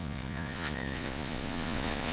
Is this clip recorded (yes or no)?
no